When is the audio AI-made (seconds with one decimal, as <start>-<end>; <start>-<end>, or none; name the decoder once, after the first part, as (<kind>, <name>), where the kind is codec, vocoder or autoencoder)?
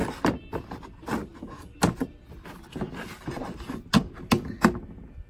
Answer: none